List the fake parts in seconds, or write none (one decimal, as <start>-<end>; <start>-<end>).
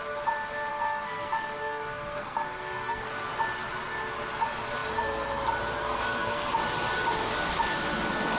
0.7-3.1; 5.8-6.5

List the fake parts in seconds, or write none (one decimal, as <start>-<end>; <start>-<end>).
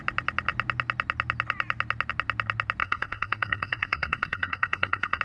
2.8-5.2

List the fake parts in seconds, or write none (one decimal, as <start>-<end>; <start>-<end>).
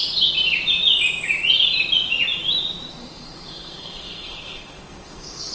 3.0-5.5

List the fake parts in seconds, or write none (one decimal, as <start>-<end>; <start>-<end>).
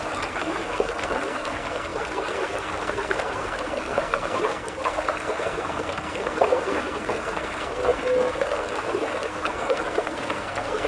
0.0-10.9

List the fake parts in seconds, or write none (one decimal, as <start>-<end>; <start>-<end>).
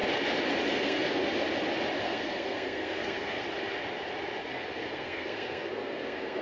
0.7-1.2; 2.0-3.4; 4.4-6.4